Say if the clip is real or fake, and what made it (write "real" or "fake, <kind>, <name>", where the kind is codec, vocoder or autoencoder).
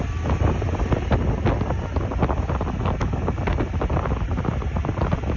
real